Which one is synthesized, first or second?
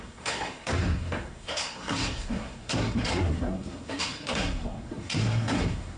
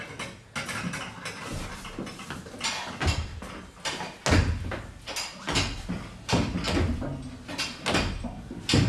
first